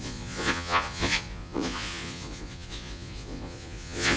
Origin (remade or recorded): remade